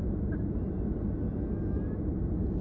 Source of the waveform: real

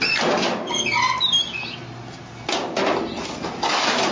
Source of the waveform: real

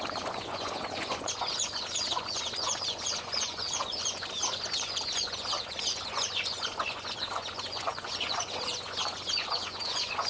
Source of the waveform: fake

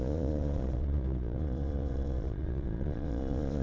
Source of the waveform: fake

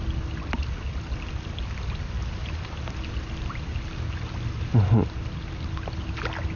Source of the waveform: real